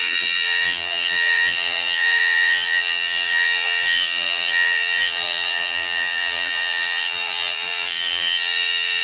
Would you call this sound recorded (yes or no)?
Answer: no